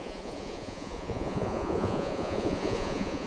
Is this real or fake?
fake